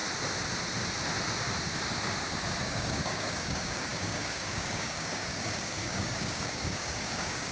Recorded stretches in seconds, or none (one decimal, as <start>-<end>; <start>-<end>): 0.0-2.6